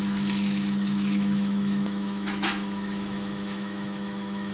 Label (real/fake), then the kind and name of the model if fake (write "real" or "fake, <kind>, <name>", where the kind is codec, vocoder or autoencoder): fake, autoencoder, DAC-VAE